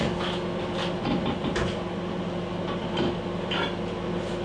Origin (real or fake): real